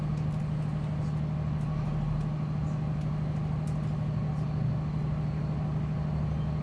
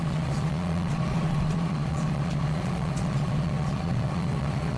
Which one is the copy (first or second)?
second